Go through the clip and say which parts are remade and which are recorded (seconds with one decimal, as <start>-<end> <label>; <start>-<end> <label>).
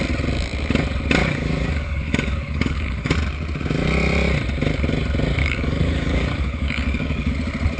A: 0.0-1.2 recorded; 1.2-3.1 remade; 3.1-5.4 recorded; 5.4-7.3 remade; 7.3-7.8 recorded